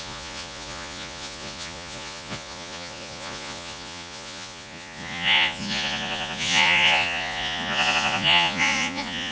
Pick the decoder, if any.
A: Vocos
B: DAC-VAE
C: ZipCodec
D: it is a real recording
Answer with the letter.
A